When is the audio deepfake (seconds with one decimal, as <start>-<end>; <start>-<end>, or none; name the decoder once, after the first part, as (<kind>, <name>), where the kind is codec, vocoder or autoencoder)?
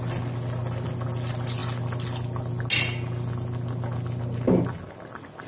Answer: none